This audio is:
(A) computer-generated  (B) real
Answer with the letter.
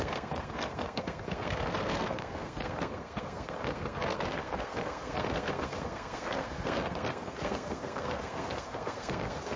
A